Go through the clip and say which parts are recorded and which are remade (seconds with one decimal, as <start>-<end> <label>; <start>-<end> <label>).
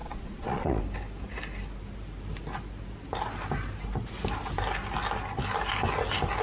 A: 0.0-0.8 remade; 0.8-6.4 recorded